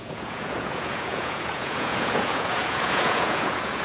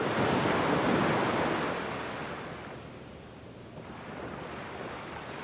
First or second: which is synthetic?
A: first